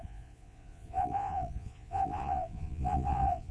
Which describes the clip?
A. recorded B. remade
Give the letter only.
B